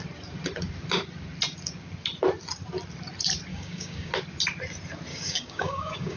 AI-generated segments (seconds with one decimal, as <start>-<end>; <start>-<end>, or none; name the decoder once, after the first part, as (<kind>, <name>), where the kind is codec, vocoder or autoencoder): 3.5-4.1 (codec, DAC); 5.1-6.2